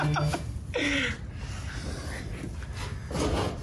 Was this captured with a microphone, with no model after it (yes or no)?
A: yes